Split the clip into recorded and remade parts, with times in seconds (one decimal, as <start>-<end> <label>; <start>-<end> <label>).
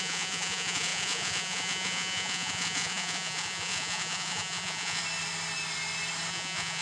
0.0-5.0 remade; 5.0-6.3 recorded; 6.3-6.8 remade